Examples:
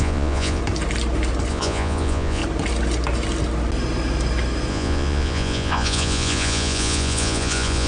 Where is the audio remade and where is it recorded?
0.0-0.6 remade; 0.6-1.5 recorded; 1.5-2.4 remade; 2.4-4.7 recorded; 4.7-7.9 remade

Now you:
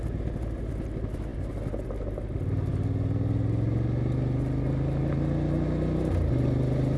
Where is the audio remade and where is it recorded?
0.0-7.0 recorded

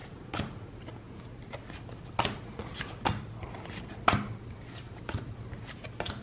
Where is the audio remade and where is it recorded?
0.0-0.8 remade; 0.8-6.2 recorded

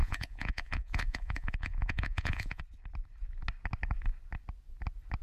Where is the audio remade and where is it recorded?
0.0-2.6 remade; 2.6-5.2 recorded

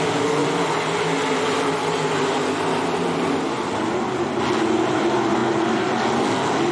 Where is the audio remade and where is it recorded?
0.0-6.7 recorded